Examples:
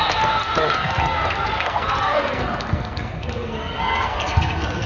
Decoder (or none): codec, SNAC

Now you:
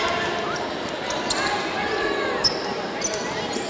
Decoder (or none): none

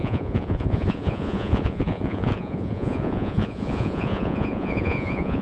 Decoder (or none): vocoder, Vocos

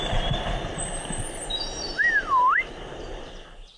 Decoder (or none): none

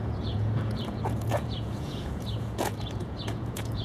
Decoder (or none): vocoder, Vocos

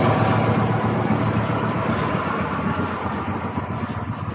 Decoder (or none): none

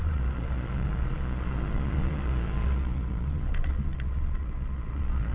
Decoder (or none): vocoder, Vocos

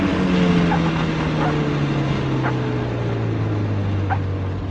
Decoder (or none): none